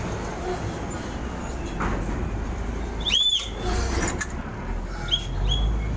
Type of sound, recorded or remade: recorded